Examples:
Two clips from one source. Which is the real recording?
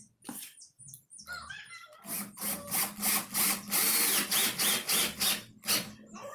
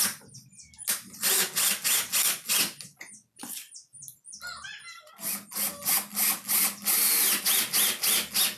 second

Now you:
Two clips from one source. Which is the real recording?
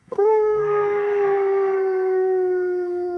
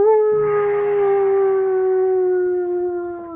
second